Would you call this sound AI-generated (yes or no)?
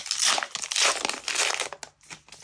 no